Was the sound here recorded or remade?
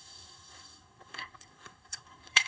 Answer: remade